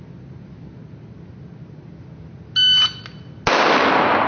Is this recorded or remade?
recorded